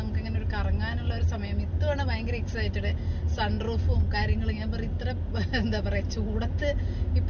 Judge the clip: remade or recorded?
recorded